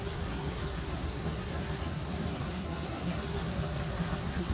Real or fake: fake